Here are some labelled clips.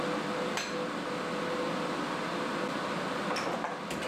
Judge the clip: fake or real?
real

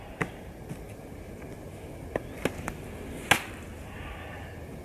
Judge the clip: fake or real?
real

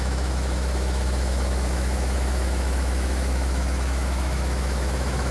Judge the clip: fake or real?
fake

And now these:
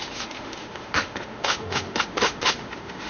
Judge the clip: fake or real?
fake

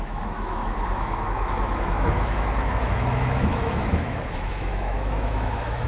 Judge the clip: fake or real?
fake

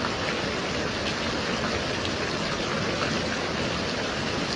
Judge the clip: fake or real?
real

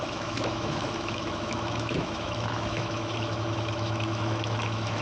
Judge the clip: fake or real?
fake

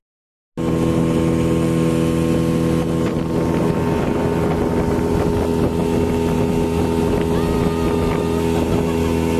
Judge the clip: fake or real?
real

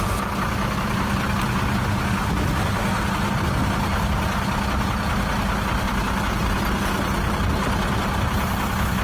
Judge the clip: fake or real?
real